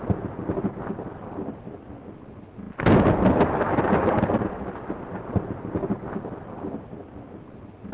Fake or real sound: real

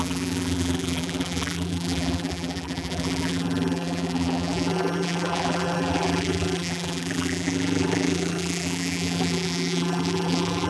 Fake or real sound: fake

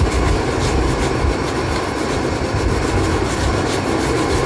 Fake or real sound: real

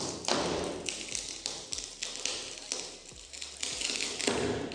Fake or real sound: real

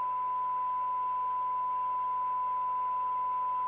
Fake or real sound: real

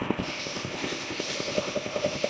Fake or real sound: fake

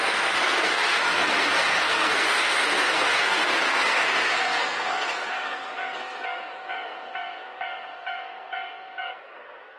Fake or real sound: fake